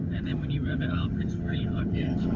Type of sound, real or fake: fake